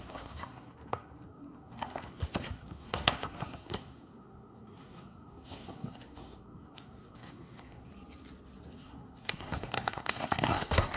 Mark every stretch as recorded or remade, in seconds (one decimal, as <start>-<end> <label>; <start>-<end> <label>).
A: 0.0-7.9 remade; 7.9-8.6 recorded; 8.6-11.0 remade